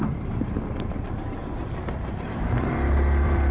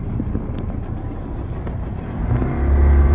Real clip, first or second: second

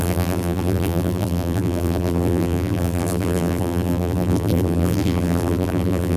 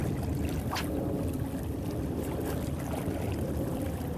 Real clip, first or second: second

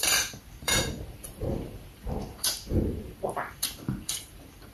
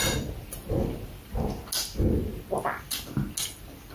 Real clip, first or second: second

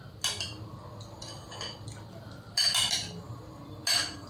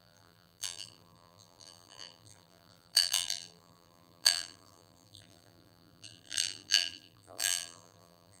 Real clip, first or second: first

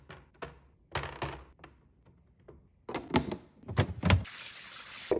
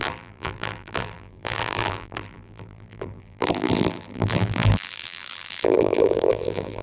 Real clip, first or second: first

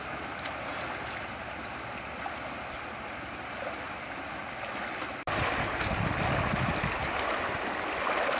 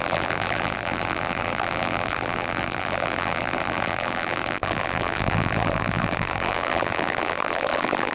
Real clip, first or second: first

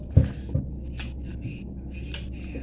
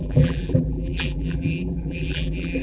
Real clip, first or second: first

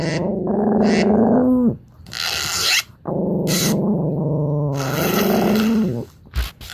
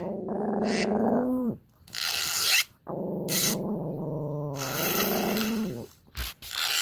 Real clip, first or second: first